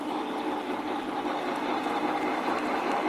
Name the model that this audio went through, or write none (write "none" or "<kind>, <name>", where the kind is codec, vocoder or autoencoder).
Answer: vocoder, BigVGAN v2